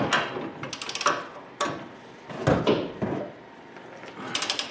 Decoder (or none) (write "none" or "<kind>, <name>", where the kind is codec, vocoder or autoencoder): none